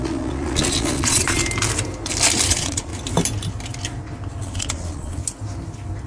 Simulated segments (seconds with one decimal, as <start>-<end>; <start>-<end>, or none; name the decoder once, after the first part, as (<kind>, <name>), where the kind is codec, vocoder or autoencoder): 0.0-1.4 (vocoder, Vocos); 2.5-2.9; 4.4-5.2